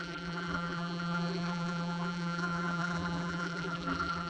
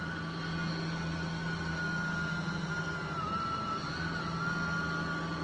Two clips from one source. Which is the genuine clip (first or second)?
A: second